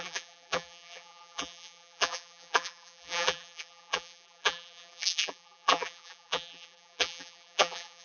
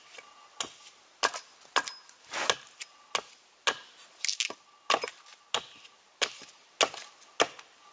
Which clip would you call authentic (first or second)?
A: second